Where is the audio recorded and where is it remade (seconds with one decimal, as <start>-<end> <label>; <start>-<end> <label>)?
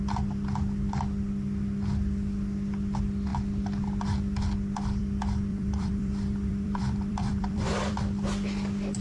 0.0-5.5 recorded; 5.5-8.0 remade; 8.0-9.0 recorded